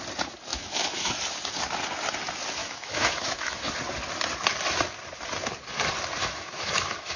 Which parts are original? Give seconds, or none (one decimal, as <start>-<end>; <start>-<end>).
0.0-0.5; 1.2-2.6; 3.7-6.2